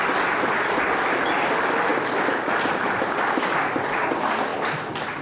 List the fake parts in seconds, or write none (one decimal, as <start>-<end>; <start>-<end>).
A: none